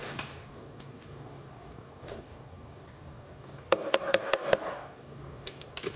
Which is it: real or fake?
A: fake